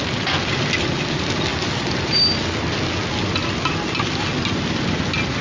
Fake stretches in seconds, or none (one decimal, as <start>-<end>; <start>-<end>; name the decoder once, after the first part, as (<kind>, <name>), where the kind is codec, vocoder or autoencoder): none